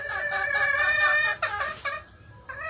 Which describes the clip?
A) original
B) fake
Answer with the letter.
A